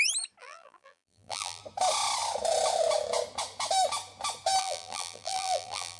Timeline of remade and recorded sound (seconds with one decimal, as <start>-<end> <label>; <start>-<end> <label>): 0.0-0.4 recorded; 0.4-1.6 remade; 1.6-4.6 recorded; 4.6-6.0 remade